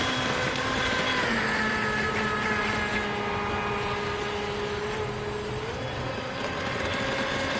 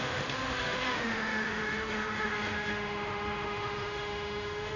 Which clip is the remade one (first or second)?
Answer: second